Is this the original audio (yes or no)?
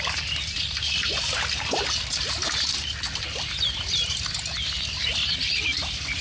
yes